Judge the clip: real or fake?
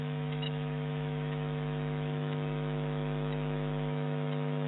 fake